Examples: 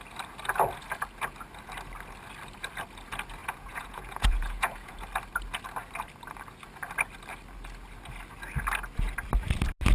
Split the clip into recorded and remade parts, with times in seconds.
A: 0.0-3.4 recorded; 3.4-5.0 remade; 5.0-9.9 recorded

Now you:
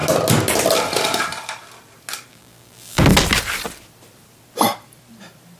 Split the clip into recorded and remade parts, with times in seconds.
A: 0.0-2.3 recorded; 2.3-3.0 remade; 3.0-5.6 recorded

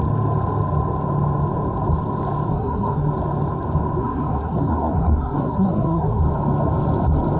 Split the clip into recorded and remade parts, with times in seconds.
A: 0.0-2.5 recorded; 2.5-3.1 remade; 3.1-4.0 recorded; 4.0-6.2 remade; 6.2-7.4 recorded

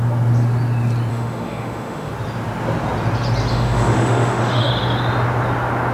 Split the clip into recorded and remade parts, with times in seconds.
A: 0.0-1.1 recorded; 1.1-2.1 remade; 2.1-3.5 recorded; 3.5-4.7 remade; 4.7-5.9 recorded

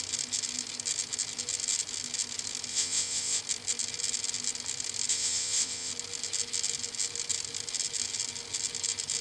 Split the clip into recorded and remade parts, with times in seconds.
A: 0.0-2.7 recorded; 2.7-3.4 remade; 3.4-5.1 recorded; 5.1-5.9 remade; 5.9-9.2 recorded

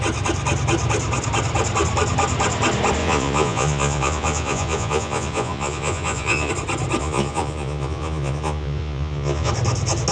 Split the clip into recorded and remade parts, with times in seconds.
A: 0.0-3.0 recorded; 3.0-6.5 remade; 6.5-7.0 recorded; 7.0-9.5 remade; 9.5-10.1 recorded

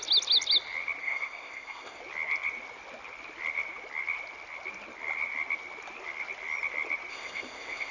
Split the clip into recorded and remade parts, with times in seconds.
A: 0.0-1.0 recorded; 1.0-2.0 remade; 2.0-7.1 recorded; 7.1-7.9 remade